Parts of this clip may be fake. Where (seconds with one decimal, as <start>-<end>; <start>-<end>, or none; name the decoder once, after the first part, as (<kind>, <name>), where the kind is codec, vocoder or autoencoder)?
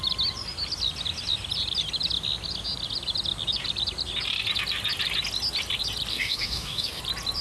6.1-7.0 (codec, DAC)